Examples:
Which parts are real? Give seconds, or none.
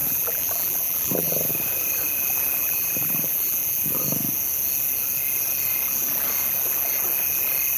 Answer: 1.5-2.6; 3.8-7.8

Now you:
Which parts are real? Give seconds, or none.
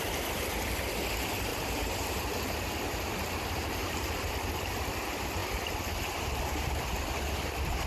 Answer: 0.0-1.5; 2.5-3.8; 4.3-7.9